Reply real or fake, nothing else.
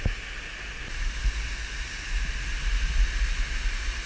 real